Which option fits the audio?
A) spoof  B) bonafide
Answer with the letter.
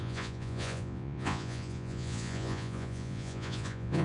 A